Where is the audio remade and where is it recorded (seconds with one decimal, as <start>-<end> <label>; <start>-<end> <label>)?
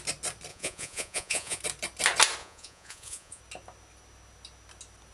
0.0-0.5 recorded; 0.5-1.6 remade; 1.6-2.4 recorded; 2.4-3.4 remade; 3.4-5.1 recorded